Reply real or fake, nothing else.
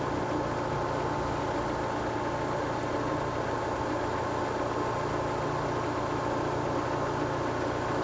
real